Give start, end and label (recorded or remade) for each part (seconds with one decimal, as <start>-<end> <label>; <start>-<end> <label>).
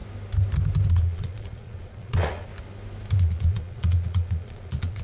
0.0-0.9 recorded; 0.9-2.5 remade; 2.5-3.2 recorded; 3.2-5.0 remade